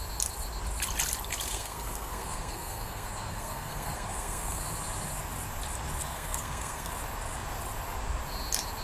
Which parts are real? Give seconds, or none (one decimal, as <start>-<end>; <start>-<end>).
0.0-1.5; 4.6-6.1; 6.9-8.8